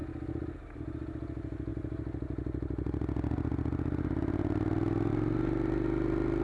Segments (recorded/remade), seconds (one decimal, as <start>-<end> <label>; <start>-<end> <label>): 0.0-6.4 recorded